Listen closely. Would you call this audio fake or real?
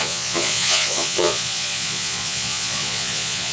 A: fake